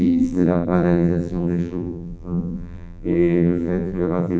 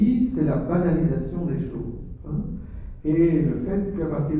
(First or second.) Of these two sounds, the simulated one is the first